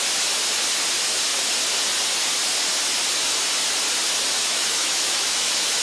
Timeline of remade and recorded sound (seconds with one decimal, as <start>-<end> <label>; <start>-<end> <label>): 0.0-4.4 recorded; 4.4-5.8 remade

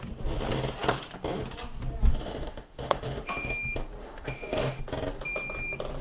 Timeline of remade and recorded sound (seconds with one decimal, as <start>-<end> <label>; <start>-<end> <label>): 0.0-2.1 recorded; 2.1-3.5 remade; 3.5-4.0 recorded; 4.0-4.8 remade; 4.8-6.0 recorded

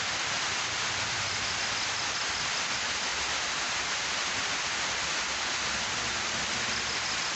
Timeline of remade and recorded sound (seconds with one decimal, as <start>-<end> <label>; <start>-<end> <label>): 0.0-7.4 recorded

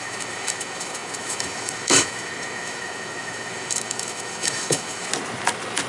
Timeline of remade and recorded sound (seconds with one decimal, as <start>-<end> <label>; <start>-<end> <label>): 0.0-5.1 remade; 5.1-5.9 recorded

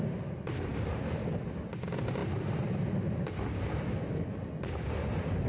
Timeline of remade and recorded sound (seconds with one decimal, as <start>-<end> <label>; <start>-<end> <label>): 0.0-5.5 recorded